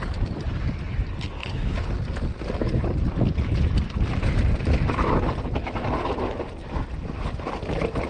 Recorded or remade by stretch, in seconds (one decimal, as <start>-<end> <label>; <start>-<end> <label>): 0.0-1.4 recorded; 1.4-1.9 remade; 1.9-8.1 recorded